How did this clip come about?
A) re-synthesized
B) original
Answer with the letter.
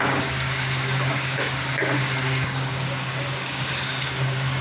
A